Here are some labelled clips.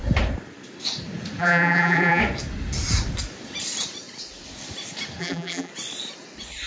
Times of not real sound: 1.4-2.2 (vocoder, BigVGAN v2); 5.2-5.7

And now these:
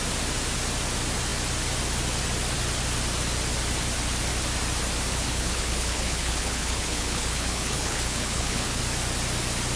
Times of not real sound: 5.1-8.8 (codec, HILCodec)

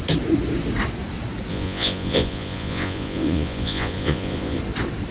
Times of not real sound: 1.5-4.6 (vocoder, Vocos)

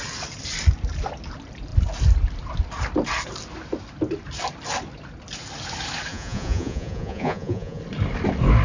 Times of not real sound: 6.1-7.8 (vocoder, Vocos)

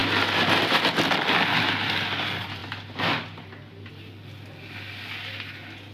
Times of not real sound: none

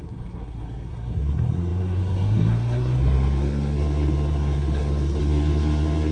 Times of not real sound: 0.0-6.1 (codec, SNAC)